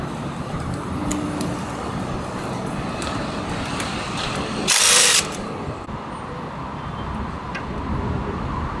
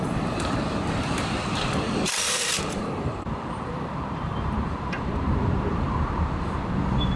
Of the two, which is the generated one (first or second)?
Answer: second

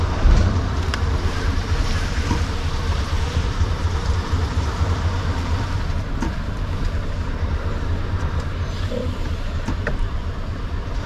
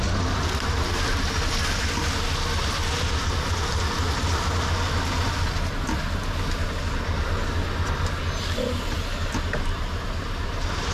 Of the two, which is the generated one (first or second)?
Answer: first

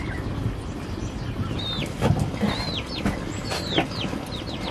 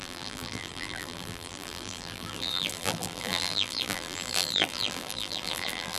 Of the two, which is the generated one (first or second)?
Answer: second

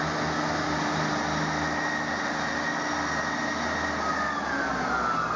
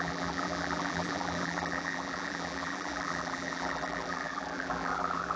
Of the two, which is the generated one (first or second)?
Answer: second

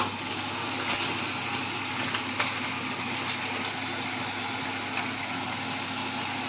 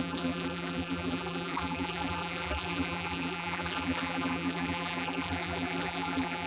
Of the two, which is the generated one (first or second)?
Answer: second